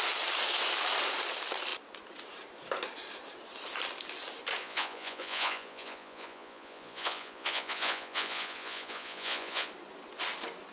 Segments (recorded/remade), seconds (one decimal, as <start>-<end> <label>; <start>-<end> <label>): 0.0-4.6 recorded; 4.6-9.7 remade; 9.7-10.7 recorded